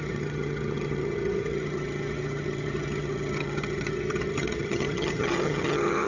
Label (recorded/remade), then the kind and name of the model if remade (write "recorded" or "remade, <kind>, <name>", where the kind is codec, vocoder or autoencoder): remade, vocoder, HiFi-GAN